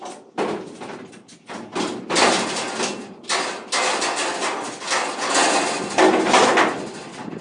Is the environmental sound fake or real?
real